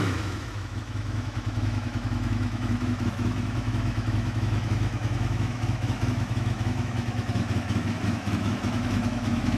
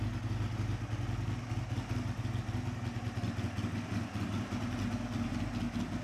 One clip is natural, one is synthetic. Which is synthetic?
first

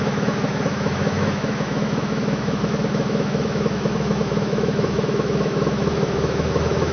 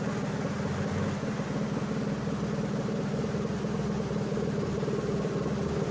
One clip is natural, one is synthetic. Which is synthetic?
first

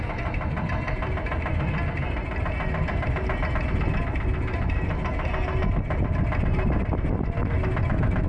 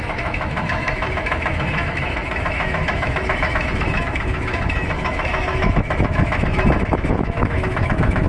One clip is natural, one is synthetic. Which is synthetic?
second